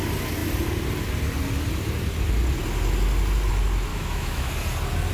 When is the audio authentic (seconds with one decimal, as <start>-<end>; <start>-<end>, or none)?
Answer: 0.0-3.9; 4.5-5.1